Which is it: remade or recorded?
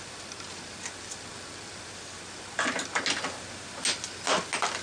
recorded